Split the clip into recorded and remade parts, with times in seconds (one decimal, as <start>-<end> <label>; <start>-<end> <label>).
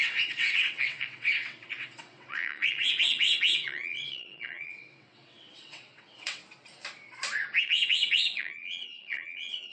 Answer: 0.0-6.4 remade; 6.4-7.6 recorded; 7.6-9.7 remade